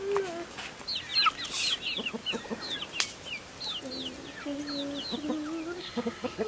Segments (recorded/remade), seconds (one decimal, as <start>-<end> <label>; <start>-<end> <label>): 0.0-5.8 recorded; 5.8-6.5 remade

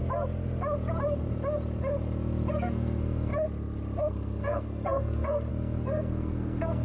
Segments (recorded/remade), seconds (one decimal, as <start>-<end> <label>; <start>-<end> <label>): 0.0-2.5 recorded; 2.5-3.3 remade; 3.3-4.0 recorded; 4.0-6.8 remade

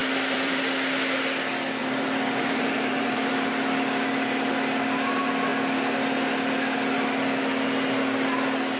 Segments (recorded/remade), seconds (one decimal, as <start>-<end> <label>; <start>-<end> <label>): 0.0-0.6 remade; 0.6-1.8 recorded; 1.8-3.3 remade; 3.3-8.8 recorded

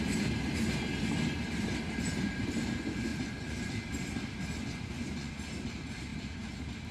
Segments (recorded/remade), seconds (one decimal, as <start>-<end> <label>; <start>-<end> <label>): 0.0-3.1 recorded; 3.1-3.7 remade; 3.7-4.6 recorded; 4.6-5.3 remade; 5.3-6.9 recorded

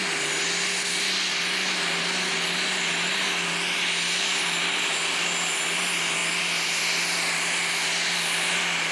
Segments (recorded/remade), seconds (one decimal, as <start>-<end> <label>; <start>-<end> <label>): 0.0-8.9 recorded

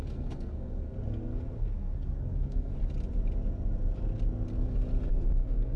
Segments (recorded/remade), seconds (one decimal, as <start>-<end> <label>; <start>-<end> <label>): 0.0-2.7 remade; 2.7-5.1 recorded; 5.1-5.8 remade